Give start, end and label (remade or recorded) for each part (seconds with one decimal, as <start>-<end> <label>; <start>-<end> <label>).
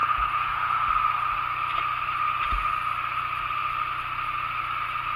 0.0-0.9 remade; 0.9-5.2 recorded